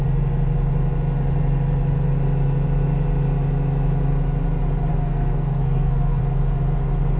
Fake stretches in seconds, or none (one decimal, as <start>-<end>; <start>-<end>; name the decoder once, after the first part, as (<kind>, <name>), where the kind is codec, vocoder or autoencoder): 4.9-6.2 (codec, SNAC)